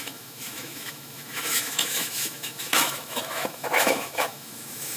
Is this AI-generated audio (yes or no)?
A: yes